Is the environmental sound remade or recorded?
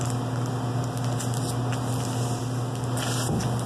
recorded